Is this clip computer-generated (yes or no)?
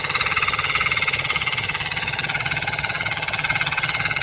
yes